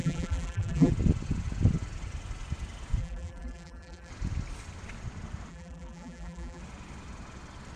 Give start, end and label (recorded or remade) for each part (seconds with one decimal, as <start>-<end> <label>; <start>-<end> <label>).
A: 0.0-0.9 remade; 0.9-3.0 recorded; 3.0-4.1 remade; 4.1-5.5 recorded; 5.5-6.6 remade; 6.6-7.8 recorded